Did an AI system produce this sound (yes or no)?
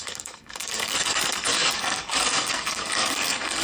yes